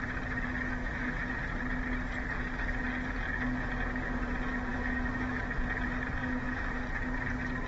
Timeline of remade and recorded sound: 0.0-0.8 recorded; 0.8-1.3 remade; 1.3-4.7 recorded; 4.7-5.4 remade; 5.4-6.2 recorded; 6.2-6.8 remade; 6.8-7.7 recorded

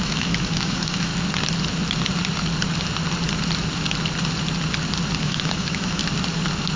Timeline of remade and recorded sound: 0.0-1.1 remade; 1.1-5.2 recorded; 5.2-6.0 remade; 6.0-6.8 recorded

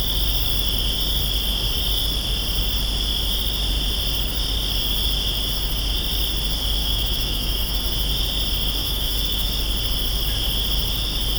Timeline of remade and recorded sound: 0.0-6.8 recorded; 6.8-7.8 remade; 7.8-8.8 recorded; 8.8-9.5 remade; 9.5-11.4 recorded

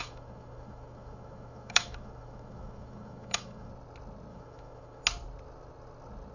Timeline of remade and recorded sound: 0.0-3.7 remade; 3.7-4.3 recorded; 4.3-5.0 remade; 5.0-6.3 recorded

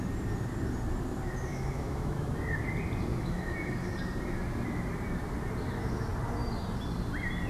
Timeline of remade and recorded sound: 0.0-1.5 recorded; 1.5-2.3 remade; 2.3-3.1 recorded; 3.1-3.9 remade; 3.9-7.5 recorded